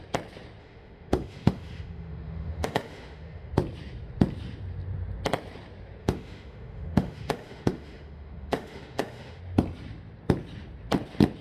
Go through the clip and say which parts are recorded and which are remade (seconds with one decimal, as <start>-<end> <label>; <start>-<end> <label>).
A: 0.0-0.6 recorded; 0.6-3.5 remade; 3.5-6.0 recorded; 6.0-9.4 remade; 9.4-11.4 recorded